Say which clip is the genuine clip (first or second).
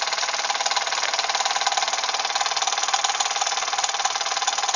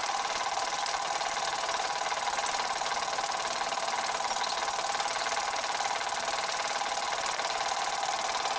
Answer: first